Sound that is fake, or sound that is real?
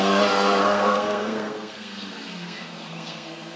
fake